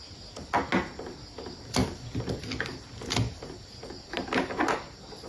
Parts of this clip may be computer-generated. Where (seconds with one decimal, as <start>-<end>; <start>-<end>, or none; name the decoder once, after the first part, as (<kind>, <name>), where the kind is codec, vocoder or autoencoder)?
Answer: none